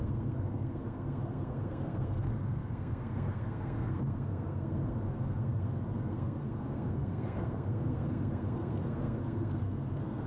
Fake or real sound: fake